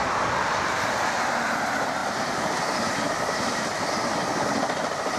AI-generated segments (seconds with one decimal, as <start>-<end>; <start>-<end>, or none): 2.0-3.9